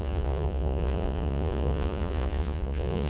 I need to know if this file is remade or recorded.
remade